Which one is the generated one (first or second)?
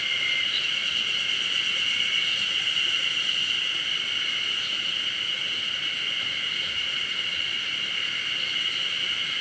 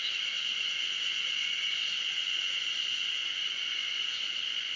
second